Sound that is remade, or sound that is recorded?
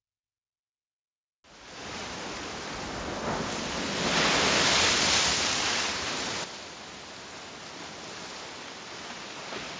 recorded